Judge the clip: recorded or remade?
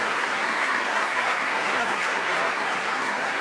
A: remade